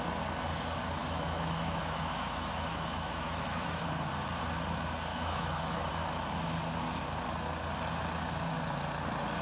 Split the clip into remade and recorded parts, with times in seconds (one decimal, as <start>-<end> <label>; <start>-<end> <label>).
0.0-1.0 recorded; 1.0-4.1 remade; 4.1-5.1 recorded; 5.1-5.9 remade; 5.9-9.4 recorded